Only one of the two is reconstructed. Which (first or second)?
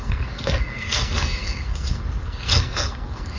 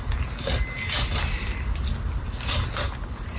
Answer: first